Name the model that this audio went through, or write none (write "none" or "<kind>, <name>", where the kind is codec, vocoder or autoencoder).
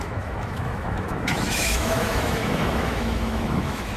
autoencoder, DAC-VAE